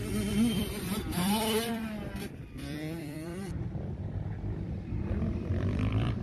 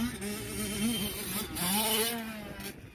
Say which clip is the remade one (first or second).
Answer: first